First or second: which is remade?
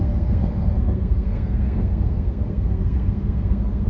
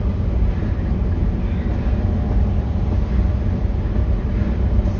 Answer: first